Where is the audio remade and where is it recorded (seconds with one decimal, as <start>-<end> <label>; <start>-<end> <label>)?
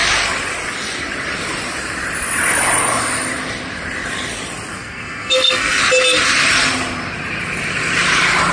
0.0-4.7 recorded; 4.7-5.8 remade; 5.8-8.5 recorded